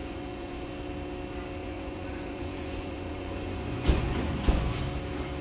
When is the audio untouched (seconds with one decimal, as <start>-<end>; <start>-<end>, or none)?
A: 0.7-1.6; 4.8-5.4